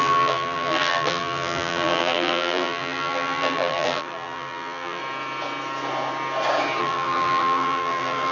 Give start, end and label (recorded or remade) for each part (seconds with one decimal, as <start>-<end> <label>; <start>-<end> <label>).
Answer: 0.0-5.0 remade; 5.0-6.8 recorded; 6.8-8.3 remade